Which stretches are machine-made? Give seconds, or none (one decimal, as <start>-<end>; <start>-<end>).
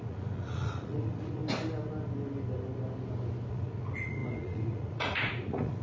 0.0-1.4; 3.5-5.8